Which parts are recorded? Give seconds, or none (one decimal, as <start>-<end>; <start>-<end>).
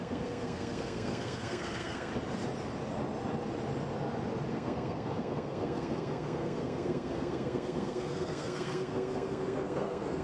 2.1-4.5